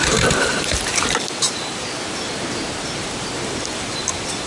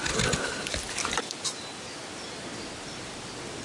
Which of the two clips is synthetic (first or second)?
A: first